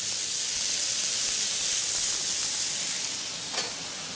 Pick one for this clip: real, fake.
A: real